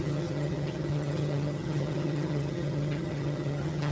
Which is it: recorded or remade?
remade